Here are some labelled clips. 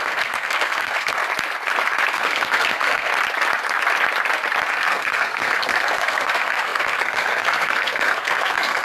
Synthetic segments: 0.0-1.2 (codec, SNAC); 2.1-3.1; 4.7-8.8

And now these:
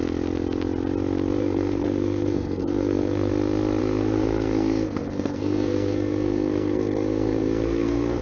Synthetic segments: 1.4-3.3 (codec, SNAC); 3.8-8.2

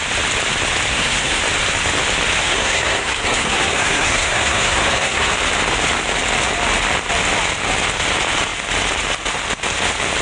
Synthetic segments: 0.9-1.4 (codec, SNAC); 2.4-5.3

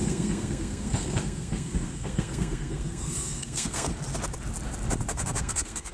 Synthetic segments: 0.0-3.9 (codec, SNAC); 5.1-5.9

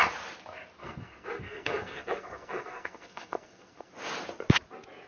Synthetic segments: 0.8-3.9 (codec, SNAC)

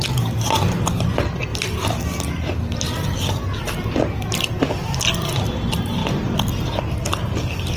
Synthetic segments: none

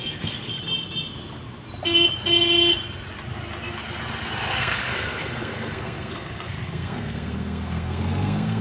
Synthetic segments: 0.0-0.5 (codec, SNAC); 4.6-8.6

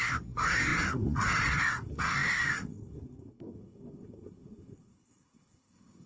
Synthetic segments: 0.0-6.1 (codec, SNAC)